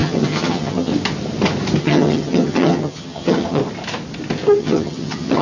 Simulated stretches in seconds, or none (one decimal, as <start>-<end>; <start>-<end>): 0.0-0.9; 1.8-3.6; 4.6-5.4

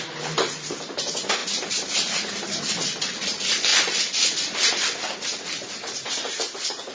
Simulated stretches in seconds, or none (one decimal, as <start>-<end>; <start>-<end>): none

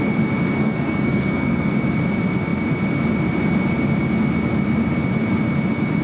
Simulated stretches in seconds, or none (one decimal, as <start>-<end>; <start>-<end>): 0.6-1.8

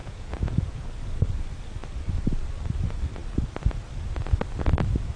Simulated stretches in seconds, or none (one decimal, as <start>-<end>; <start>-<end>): 0.0-0.9

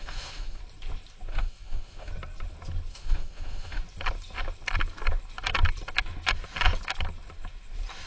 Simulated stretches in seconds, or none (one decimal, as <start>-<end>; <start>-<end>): 0.0-0.6; 1.3-2.1; 2.9-3.8

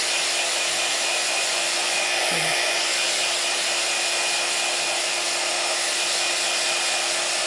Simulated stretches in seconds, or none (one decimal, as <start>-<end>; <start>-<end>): 1.2-2.9